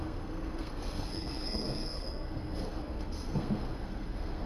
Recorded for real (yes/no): no